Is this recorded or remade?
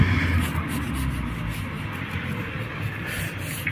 recorded